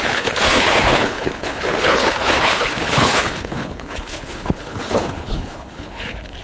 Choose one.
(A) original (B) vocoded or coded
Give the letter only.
B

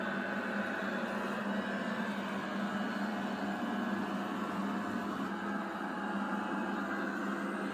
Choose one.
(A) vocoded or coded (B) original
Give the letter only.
B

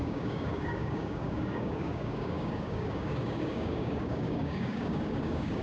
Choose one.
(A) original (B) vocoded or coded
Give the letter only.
B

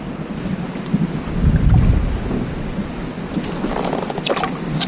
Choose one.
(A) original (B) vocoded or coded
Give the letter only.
A